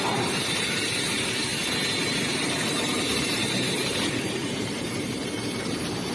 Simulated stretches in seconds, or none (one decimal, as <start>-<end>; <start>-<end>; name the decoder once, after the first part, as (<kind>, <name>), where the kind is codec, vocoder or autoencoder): 0.0-1.5 (vocoder, BigVGAN v2); 2.0-6.1